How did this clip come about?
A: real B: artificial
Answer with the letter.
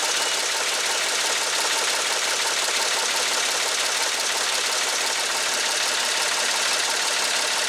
A